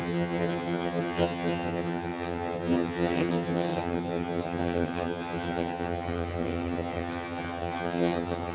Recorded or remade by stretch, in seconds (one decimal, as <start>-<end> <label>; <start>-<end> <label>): 0.0-8.5 remade